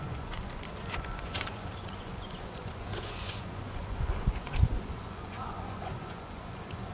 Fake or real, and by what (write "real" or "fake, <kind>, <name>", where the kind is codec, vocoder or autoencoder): fake, vocoder, Vocos